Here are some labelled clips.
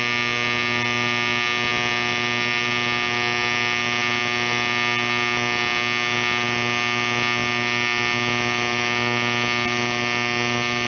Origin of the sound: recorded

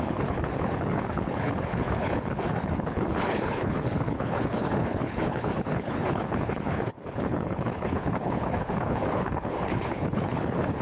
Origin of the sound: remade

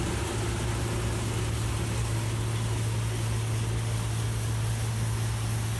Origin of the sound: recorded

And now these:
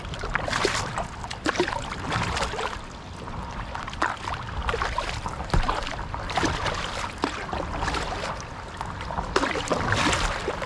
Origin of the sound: recorded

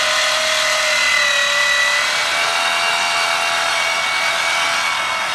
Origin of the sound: recorded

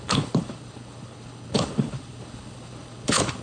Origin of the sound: remade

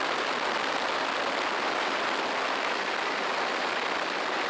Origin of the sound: recorded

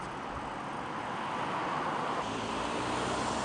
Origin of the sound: recorded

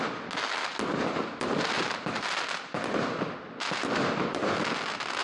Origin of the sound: recorded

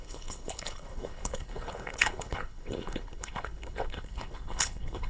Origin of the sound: remade